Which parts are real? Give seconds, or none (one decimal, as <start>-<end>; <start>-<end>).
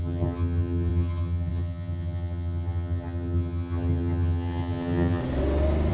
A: 5.2-5.9